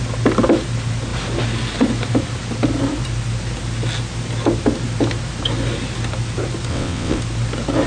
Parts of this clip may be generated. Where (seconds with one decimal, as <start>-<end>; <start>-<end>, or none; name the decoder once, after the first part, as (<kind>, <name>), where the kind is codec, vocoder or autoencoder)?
6.7-7.2 (vocoder, WaveNeXt)